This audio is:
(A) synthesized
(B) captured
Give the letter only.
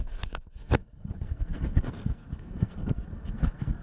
A